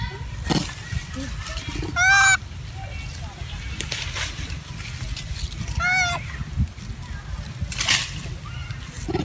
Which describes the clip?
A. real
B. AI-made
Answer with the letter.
A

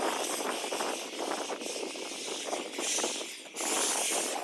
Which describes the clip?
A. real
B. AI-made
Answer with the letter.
A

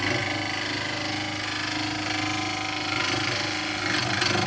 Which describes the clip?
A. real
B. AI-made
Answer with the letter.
A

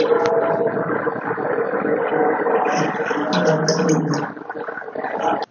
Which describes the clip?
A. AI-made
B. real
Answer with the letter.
B